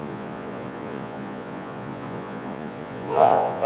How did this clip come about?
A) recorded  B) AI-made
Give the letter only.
B